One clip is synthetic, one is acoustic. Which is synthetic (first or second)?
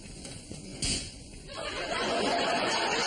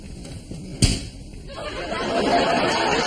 first